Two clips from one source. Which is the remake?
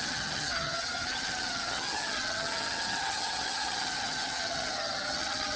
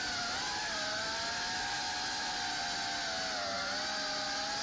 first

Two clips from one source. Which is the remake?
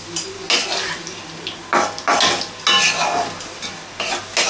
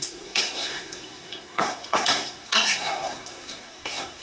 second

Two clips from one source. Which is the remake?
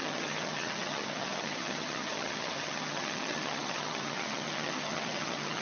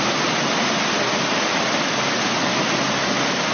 first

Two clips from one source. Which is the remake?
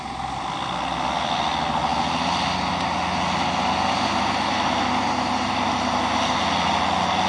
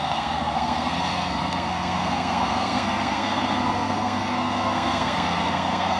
second